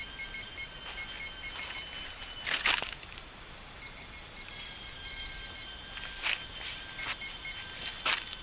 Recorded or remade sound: recorded